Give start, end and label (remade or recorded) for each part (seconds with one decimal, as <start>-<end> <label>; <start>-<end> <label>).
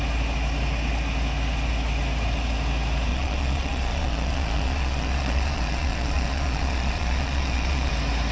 0.0-3.1 recorded; 3.1-7.9 remade; 7.9-8.3 recorded